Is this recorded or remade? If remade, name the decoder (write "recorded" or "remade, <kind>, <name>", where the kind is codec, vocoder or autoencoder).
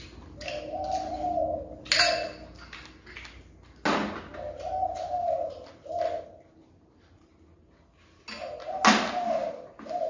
recorded